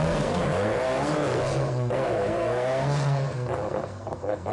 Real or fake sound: fake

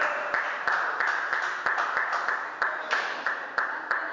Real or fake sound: real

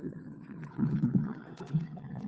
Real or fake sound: fake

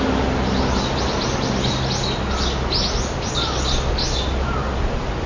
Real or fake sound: real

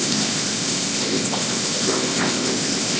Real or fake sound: fake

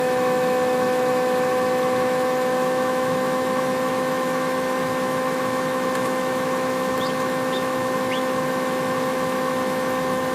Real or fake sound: fake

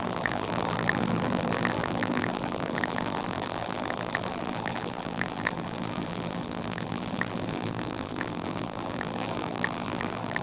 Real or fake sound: fake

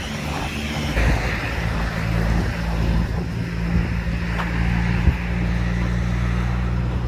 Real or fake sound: real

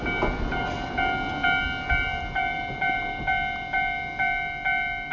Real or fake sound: real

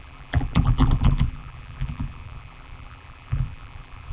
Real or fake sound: fake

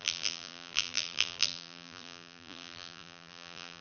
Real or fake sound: fake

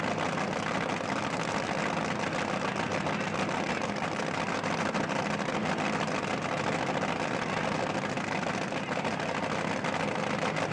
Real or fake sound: real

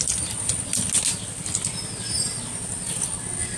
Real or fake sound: real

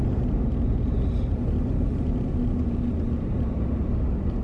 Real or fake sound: real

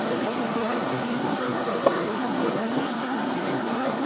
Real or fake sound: fake